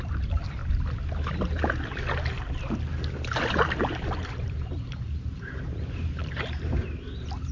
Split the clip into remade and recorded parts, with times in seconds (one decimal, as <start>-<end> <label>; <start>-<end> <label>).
0.0-0.6 remade; 0.6-4.4 recorded; 4.4-7.5 remade